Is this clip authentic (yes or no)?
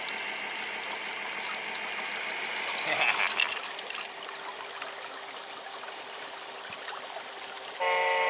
yes